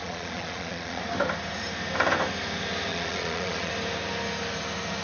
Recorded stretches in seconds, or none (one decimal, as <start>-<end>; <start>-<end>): 1.0-2.9; 3.7-5.0